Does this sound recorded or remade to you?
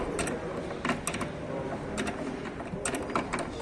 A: recorded